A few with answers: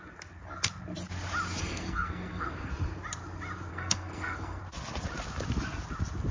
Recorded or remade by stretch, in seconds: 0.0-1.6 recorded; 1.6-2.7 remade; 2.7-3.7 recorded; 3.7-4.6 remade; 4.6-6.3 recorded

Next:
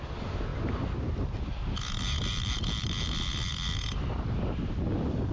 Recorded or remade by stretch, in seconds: 0.0-5.3 recorded

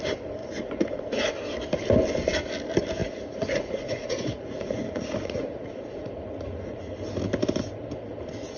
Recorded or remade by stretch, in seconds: 0.0-0.4 recorded; 0.4-1.3 remade; 1.3-3.0 recorded; 3.0-7.1 remade; 7.1-8.6 recorded

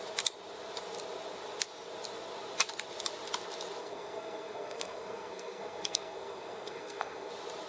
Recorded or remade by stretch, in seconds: 0.0-3.8 recorded; 3.8-7.3 remade; 7.3-7.7 recorded

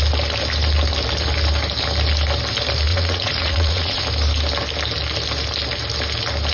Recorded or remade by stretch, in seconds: 0.0-2.9 recorded; 2.9-4.0 remade; 4.0-6.5 recorded

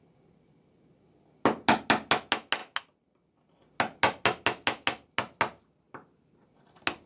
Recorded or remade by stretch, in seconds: 0.0-7.1 recorded